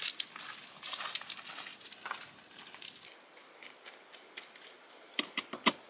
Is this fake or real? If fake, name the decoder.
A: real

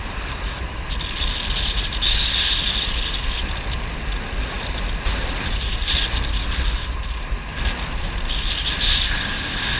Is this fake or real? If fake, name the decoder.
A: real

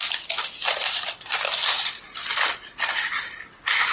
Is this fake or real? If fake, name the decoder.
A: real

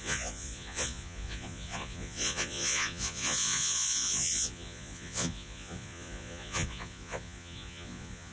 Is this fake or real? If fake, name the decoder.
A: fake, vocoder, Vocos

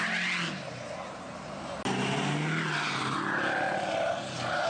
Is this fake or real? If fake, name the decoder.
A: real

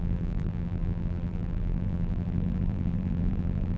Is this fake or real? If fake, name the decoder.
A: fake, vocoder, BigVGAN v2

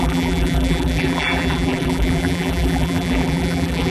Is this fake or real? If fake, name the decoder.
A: fake, vocoder, BigVGAN v2